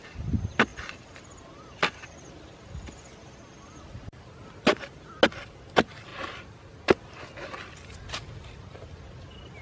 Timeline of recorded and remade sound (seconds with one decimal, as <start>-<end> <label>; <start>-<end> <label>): 0.0-0.7 recorded; 0.7-2.5 remade; 2.5-9.6 recorded